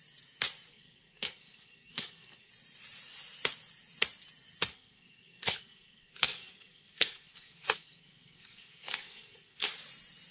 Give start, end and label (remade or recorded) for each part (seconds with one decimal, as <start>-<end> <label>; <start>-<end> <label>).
0.0-0.7 recorded; 0.7-2.5 remade; 2.5-4.7 recorded; 4.7-9.7 remade; 9.7-10.3 recorded